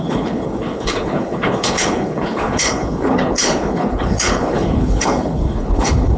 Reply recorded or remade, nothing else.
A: remade